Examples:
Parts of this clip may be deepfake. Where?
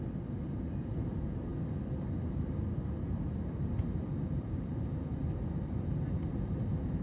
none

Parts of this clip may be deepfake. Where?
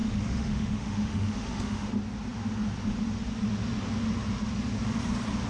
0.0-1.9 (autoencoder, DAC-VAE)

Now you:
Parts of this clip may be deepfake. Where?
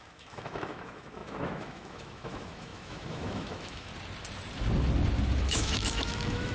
0.0-3.9 (autoencoder, DAC-VAE); 5.4-6.5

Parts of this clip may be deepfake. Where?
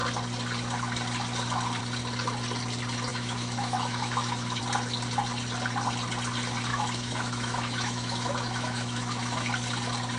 3.1-4.6 (autoencoder, DAC-VAE); 6.7-9.5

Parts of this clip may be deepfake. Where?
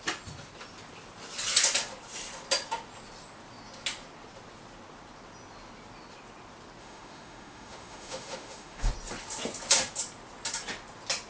6.8-8.9 (autoencoder, DAC-VAE)